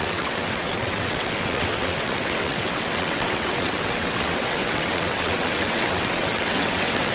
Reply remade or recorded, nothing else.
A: remade